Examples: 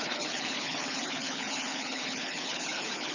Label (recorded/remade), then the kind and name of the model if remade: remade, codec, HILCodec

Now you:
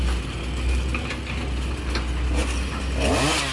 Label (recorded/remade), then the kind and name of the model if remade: recorded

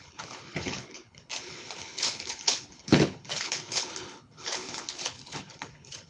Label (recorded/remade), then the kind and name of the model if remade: remade, codec, HILCodec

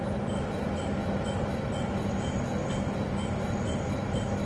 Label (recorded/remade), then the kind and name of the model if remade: recorded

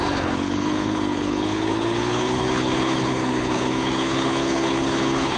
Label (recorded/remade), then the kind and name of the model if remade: remade, codec, HILCodec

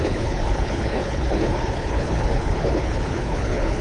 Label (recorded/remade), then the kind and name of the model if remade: remade, codec, HILCodec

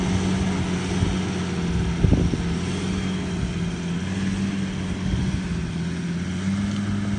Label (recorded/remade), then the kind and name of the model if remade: recorded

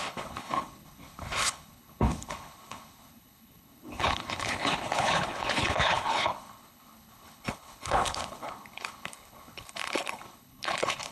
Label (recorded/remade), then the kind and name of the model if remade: remade, codec, HILCodec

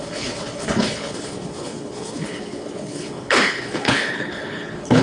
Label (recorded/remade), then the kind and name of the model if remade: remade, codec, HILCodec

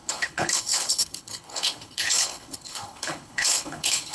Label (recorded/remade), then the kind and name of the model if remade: remade, codec, HILCodec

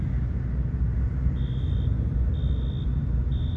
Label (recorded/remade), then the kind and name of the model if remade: recorded